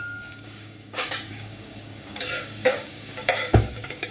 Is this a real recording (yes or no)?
no